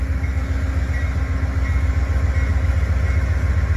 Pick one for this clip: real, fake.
real